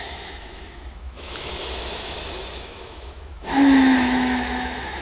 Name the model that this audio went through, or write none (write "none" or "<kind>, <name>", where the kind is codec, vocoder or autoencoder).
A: autoencoder, DAC-VAE